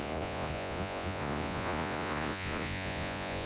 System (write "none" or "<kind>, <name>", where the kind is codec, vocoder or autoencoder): vocoder, Vocos